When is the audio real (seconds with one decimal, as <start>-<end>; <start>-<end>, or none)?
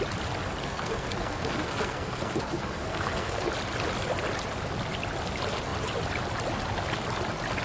0.0-0.6; 3.5-7.6